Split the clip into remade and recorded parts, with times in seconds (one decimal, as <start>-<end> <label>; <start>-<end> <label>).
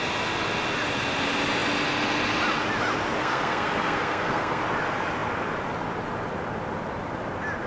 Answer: 0.0-3.2 recorded; 3.2-4.6 remade; 4.6-7.7 recorded